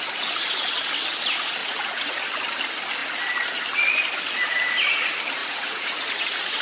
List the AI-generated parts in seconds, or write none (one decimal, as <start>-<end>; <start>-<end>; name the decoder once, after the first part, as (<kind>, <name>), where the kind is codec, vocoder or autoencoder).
1.6-2.3 (vocoder, Vocos); 5.4-6.6